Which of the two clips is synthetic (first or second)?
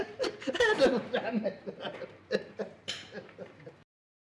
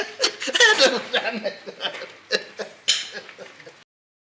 first